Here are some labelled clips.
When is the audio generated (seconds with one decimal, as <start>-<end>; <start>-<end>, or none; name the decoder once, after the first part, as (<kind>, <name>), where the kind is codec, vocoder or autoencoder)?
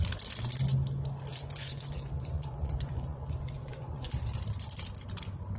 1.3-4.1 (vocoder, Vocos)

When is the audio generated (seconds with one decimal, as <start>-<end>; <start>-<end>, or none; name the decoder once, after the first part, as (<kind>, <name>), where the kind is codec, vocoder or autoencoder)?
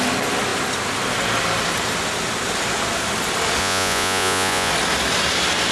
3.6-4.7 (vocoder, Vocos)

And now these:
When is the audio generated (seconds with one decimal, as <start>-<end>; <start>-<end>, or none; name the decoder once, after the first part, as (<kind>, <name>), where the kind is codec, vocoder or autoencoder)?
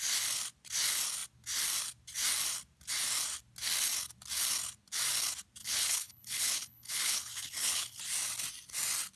5.6-8.0 (codec, HILCodec)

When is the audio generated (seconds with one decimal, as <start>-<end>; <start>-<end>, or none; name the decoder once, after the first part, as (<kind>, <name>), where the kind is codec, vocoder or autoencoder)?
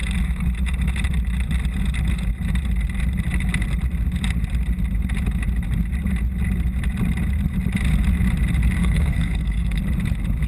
8.8-9.8 (codec, SNAC)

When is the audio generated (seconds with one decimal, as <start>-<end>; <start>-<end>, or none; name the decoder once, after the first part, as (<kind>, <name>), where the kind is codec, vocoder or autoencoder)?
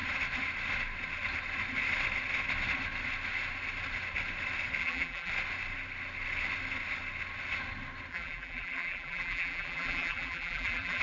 4.8-5.3 (vocoder, BigVGAN v2); 8.1-11.0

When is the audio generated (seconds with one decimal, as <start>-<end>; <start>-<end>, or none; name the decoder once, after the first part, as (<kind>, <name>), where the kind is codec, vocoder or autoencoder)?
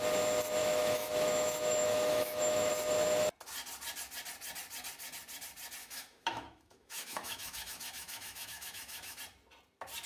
0.6-2.7 (autoencoder, DAC-VAE); 5.8-9.2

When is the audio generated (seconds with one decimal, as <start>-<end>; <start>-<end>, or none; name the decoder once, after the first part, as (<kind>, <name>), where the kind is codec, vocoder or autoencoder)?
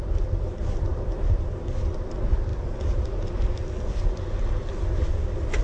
0.9-1.5 (vocoder, BigVGAN v2)